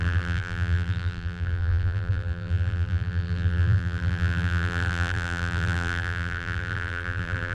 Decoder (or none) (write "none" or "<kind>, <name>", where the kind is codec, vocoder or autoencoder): vocoder, BigVGAN v2